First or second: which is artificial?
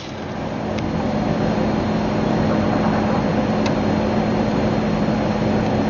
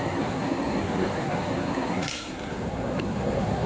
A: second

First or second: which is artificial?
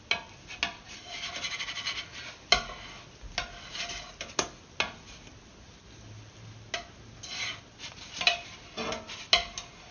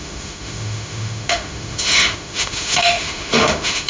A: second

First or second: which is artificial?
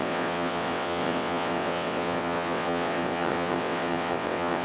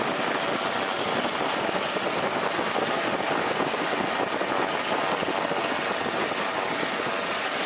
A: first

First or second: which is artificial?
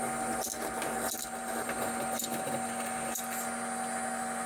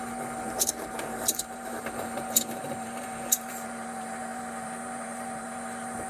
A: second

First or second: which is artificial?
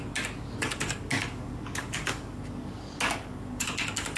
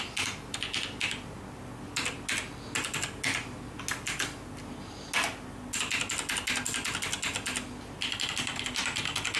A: first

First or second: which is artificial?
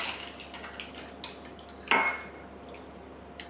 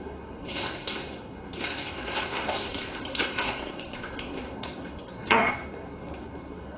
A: second